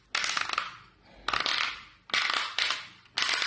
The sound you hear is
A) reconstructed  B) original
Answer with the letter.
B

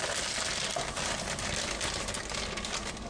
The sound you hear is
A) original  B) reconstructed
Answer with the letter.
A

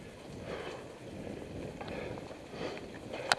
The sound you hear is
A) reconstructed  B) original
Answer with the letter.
B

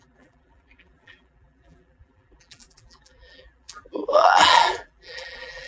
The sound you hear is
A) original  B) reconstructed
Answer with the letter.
B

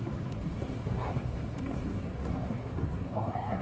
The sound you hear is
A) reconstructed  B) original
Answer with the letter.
A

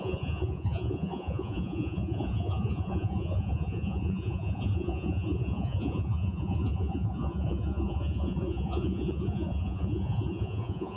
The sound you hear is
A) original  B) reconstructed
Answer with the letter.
B